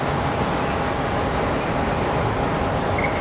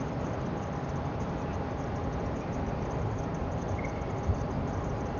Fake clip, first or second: second